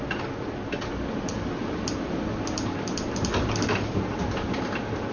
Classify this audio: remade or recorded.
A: recorded